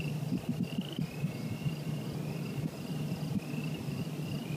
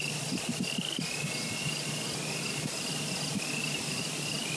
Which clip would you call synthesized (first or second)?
first